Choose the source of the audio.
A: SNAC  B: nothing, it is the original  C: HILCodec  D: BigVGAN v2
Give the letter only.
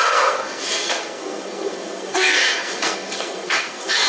A